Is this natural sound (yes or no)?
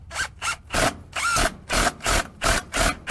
yes